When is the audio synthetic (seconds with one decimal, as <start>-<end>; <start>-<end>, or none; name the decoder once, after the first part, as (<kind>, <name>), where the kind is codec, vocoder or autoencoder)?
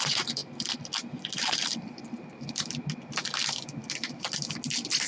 none